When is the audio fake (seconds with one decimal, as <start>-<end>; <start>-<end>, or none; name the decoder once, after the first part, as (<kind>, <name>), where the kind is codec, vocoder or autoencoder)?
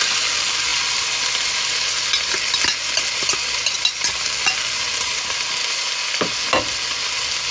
none